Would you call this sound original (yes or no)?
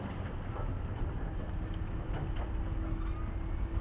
yes